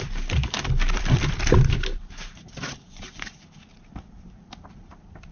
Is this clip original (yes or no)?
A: no